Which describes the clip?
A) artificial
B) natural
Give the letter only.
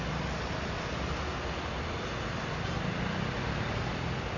B